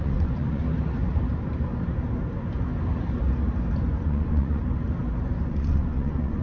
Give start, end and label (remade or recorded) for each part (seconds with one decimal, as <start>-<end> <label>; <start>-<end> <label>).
0.0-0.6 remade; 0.6-4.0 recorded; 4.0-4.6 remade; 4.6-5.5 recorded; 5.5-6.4 remade